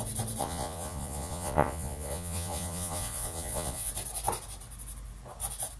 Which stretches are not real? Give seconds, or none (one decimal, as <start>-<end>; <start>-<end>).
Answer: 0.4-3.9